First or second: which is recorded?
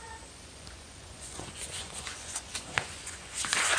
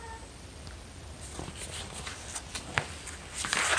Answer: second